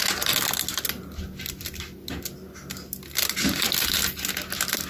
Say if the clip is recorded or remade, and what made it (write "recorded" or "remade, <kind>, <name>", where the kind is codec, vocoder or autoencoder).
recorded